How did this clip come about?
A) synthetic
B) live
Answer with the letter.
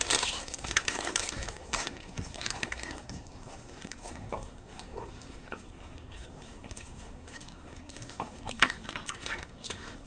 A